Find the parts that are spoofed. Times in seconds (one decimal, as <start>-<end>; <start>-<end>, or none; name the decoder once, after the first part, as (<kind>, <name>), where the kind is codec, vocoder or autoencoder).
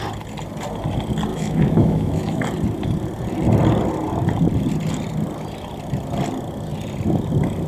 1.3-2.4 (autoencoder, DAC-VAE)